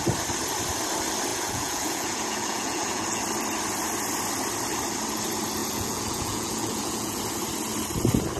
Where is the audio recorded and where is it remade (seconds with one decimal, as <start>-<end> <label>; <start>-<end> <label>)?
0.0-1.3 recorded; 1.3-3.2 remade; 3.2-5.6 recorded; 5.6-7.2 remade; 7.2-8.4 recorded